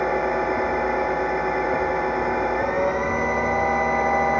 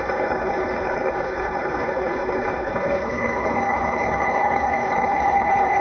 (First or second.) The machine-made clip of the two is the second